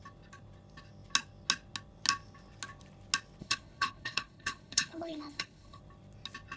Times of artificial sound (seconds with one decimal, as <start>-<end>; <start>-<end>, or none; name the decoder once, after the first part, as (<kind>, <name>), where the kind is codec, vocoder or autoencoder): 3.4-5.8 (codec, HILCodec)